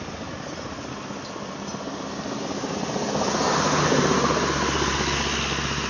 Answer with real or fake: real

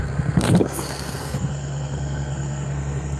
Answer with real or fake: fake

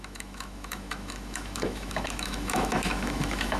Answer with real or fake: fake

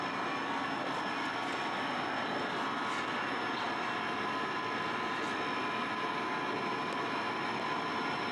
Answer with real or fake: real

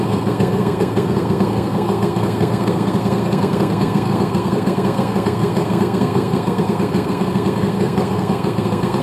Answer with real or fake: fake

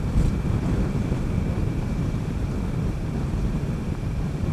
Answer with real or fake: fake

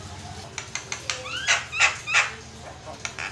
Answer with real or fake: real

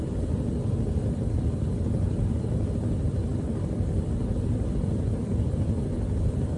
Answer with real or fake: real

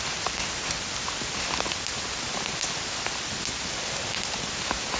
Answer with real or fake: real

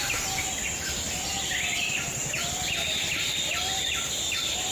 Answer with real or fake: real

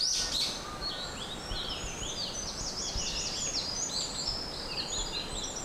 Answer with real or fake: real